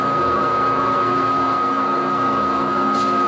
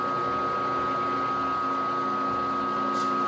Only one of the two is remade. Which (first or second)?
first